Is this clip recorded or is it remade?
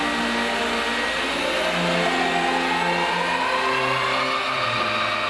recorded